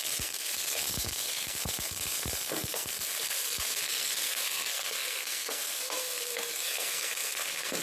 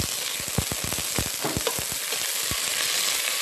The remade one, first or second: first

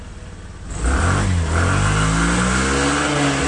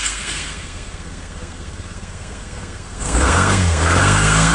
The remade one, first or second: second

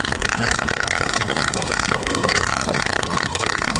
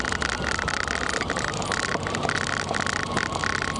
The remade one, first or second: first